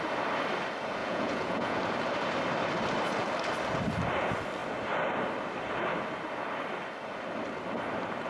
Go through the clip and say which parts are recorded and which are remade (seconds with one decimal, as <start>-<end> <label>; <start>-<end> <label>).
0.0-1.0 recorded; 1.0-1.8 remade; 1.8-8.3 recorded